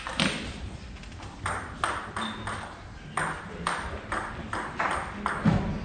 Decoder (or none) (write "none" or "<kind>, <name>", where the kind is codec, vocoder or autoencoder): none